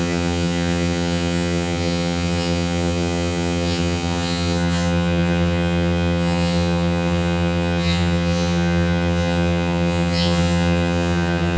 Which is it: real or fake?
fake